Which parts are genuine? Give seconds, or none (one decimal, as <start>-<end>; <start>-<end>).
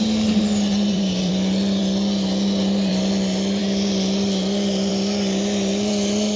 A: 0.0-0.7; 1.3-6.4